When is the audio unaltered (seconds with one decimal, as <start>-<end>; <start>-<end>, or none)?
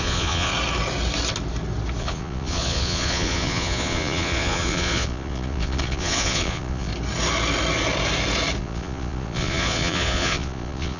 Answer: 0.5-2.0; 6.9-8.6